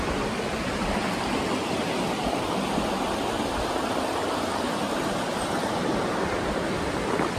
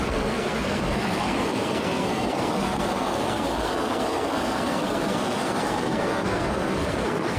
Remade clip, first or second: second